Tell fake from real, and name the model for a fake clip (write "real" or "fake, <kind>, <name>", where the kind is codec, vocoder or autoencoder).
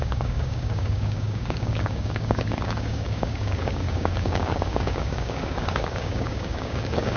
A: fake, codec, DAC